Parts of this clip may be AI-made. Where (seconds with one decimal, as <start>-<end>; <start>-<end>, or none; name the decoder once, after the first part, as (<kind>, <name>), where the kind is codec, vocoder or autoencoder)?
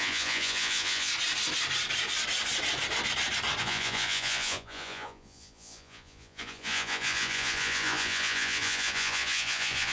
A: 0.0-1.1 (vocoder, Vocos); 3.6-9.9